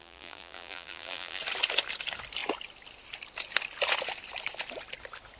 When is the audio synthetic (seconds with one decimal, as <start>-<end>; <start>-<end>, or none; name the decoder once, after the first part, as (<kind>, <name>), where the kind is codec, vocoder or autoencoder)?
0.0-1.4 (vocoder, BigVGAN v2)